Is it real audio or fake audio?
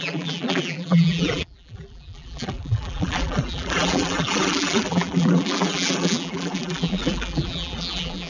fake